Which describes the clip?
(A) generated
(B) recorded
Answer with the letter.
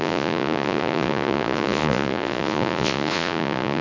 A